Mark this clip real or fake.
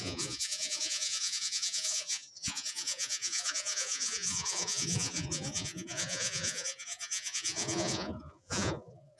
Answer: fake